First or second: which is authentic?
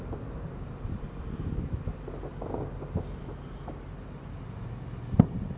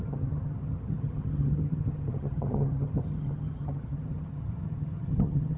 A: first